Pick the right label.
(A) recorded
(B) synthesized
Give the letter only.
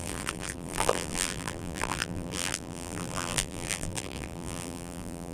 B